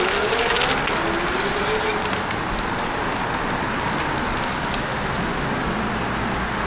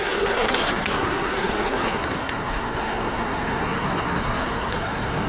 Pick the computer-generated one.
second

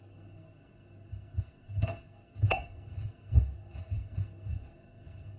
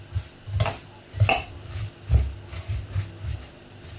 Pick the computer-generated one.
first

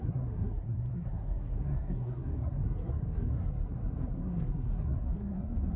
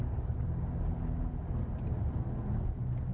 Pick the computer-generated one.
first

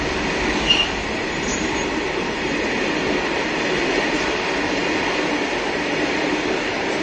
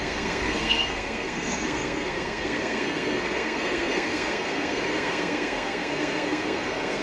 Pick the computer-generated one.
second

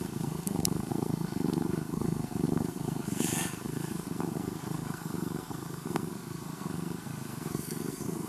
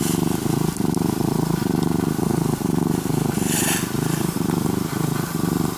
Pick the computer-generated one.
first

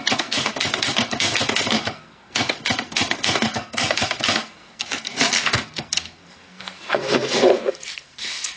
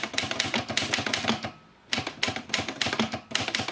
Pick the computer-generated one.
first